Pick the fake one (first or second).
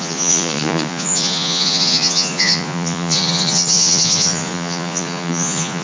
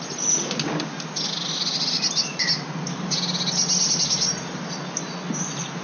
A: first